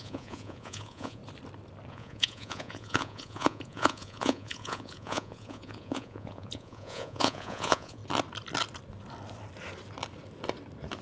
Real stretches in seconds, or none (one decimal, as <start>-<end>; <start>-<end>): 1.2-1.9; 8.0-11.0